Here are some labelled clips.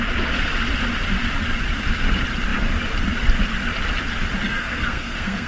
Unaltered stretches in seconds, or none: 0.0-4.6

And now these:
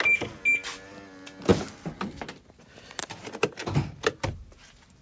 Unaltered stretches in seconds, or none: 0.0-5.0